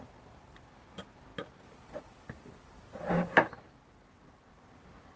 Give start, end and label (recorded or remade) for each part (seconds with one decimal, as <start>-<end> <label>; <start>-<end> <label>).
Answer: 0.0-5.2 recorded